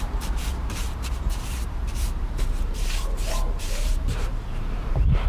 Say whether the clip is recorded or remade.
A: remade